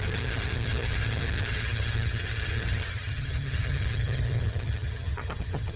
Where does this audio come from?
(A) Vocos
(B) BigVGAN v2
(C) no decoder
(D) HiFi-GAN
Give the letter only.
D